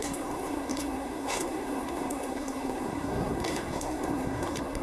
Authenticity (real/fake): fake